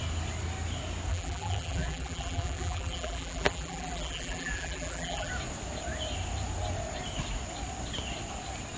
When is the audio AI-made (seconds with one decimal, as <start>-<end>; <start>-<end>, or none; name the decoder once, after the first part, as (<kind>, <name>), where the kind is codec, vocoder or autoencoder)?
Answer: 1.1-5.3 (vocoder, BigVGAN v2)